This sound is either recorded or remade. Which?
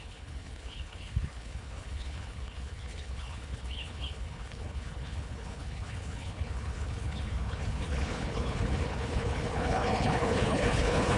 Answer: remade